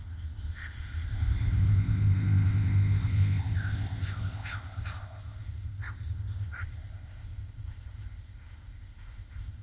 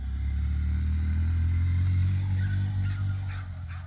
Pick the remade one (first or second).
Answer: first